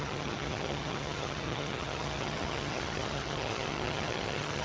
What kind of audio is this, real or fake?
fake